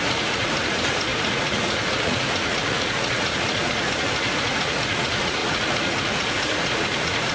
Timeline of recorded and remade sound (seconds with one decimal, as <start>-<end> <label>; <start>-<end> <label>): 0.0-7.3 remade